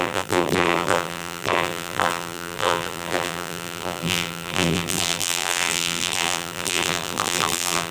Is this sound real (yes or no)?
no